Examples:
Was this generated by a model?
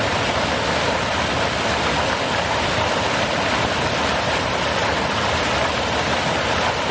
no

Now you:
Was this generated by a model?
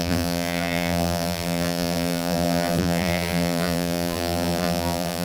yes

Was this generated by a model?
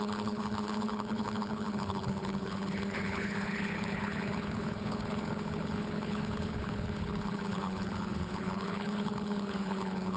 yes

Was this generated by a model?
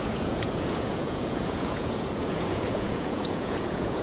yes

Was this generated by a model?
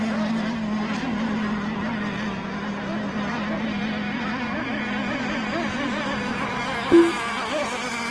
no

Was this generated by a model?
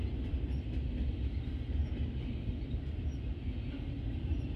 no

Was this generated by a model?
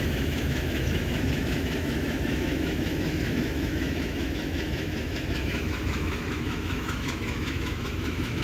yes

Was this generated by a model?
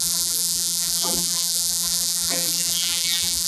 yes